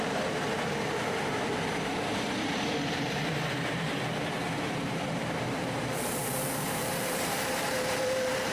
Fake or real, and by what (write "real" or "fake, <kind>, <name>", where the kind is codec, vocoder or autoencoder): fake, vocoder, BigVGAN v2